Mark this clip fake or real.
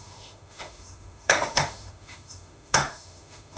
fake